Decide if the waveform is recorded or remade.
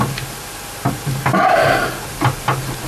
recorded